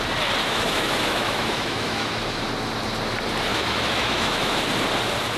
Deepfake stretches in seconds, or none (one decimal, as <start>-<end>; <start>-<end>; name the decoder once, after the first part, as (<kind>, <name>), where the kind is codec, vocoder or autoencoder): 0.4-2.4 (autoencoder, DAC-VAE); 3.5-4.7